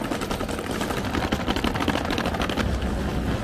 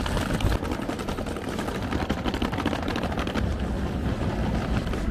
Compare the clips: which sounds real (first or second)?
first